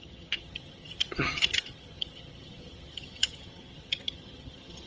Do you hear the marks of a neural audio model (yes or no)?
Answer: yes